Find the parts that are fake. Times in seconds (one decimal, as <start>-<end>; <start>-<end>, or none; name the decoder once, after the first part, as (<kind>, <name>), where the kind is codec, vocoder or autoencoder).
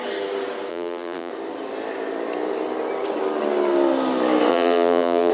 0.7-1.3 (vocoder, BigVGAN v2); 4.5-5.3